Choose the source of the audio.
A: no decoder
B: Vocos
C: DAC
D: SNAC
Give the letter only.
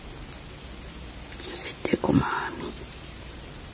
A